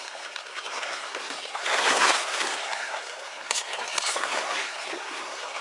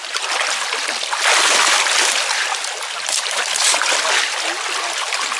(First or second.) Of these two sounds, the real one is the second